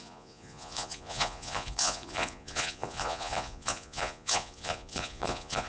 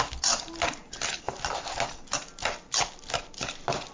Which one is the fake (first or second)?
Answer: first